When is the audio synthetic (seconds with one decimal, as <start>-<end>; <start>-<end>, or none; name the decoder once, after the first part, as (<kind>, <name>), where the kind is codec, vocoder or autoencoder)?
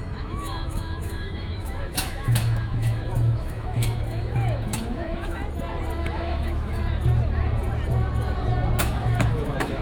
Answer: 0.0-5.4 (autoencoder, DAC-VAE); 6.0-6.8; 8.8-9.8